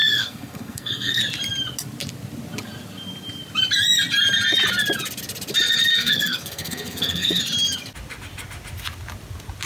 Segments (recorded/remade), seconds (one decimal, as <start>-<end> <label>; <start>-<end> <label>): 0.0-1.2 remade; 1.2-5.9 recorded; 5.9-7.4 remade; 7.4-9.7 recorded